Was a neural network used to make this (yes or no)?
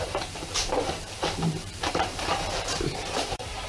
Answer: yes